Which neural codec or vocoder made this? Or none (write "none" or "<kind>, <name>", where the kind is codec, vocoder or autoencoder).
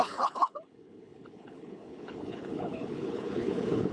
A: codec, HILCodec